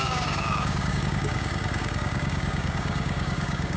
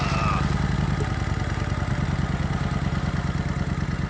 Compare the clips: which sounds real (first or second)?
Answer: second